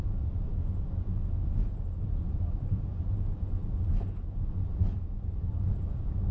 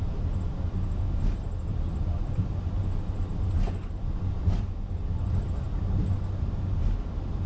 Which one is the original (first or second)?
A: second